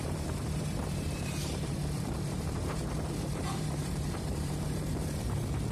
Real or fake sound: fake